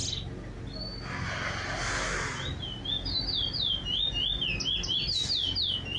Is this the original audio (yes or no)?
yes